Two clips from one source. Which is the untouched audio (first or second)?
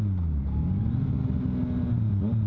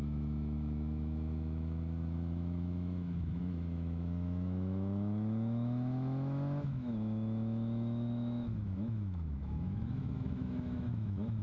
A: first